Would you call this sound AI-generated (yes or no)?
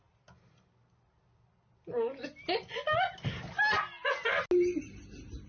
no